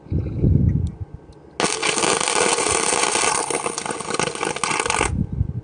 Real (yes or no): yes